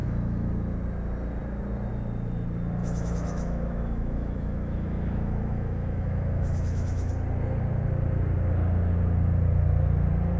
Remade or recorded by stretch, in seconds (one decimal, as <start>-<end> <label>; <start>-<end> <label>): 0.0-0.5 remade; 0.5-2.8 recorded; 2.8-7.1 remade; 7.1-10.4 recorded